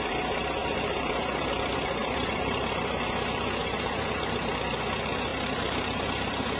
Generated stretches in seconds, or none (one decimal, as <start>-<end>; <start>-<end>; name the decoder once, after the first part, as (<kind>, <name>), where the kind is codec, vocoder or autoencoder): 0.6-1.5 (vocoder, BigVGAN v2); 2.0-2.7; 3.6-4.2; 5.3-6.6